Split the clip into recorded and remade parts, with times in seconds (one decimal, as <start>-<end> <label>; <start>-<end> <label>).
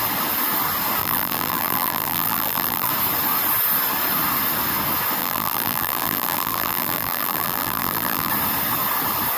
0.0-1.0 recorded; 1.0-2.9 remade; 2.9-5.2 recorded; 5.2-8.3 remade; 8.3-9.4 recorded